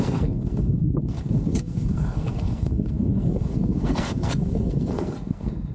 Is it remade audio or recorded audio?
remade